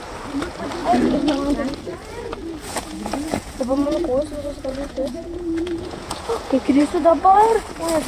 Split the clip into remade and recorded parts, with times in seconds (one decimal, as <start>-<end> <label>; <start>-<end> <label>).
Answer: 0.0-0.8 recorded; 0.8-1.3 remade; 1.3-2.7 recorded; 2.7-7.6 remade; 7.6-8.1 recorded